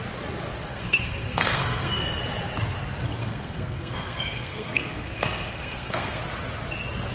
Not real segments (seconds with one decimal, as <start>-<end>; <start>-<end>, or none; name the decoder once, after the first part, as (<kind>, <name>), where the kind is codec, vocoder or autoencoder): 0.7-2.2 (codec, SNAC); 3.2-6.2